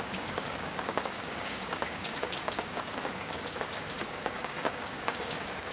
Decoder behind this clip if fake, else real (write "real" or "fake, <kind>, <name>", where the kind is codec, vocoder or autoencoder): fake, codec, DAC